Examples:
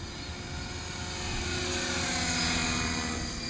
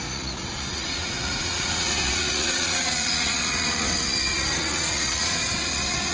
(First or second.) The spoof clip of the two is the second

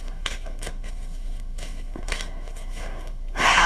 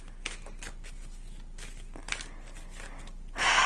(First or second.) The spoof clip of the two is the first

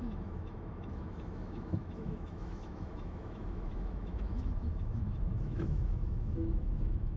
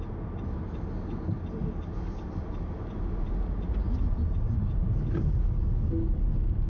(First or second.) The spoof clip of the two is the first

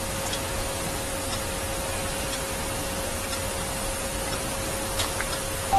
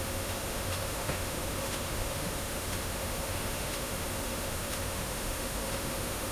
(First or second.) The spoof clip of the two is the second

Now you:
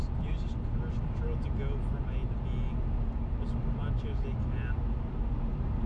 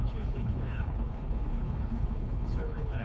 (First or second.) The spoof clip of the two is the second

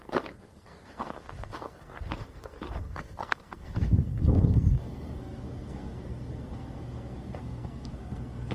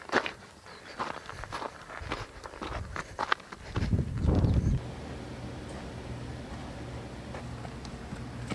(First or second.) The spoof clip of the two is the first